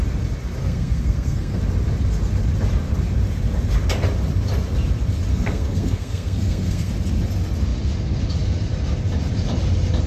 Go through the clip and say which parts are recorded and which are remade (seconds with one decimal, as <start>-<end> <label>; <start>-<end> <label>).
0.0-0.6 recorded; 0.6-1.6 remade; 1.6-5.3 recorded; 5.3-6.9 remade; 6.9-10.1 recorded